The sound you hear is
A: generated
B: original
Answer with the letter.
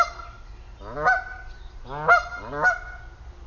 B